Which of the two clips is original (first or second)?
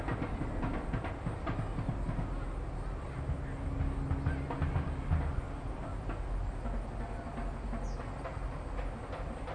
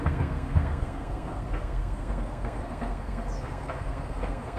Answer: first